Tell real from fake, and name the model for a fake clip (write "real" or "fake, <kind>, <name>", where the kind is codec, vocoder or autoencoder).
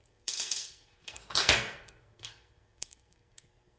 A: fake, codec, SNAC